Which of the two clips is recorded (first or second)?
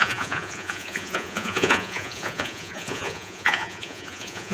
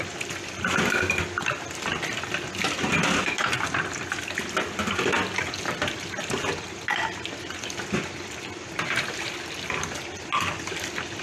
second